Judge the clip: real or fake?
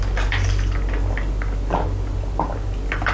real